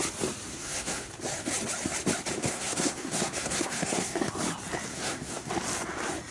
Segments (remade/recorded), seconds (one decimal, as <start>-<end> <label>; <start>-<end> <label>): 0.0-0.5 recorded; 0.5-1.1 remade; 1.1-2.4 recorded; 2.4-4.3 remade; 4.3-4.9 recorded; 4.9-5.5 remade; 5.5-6.3 recorded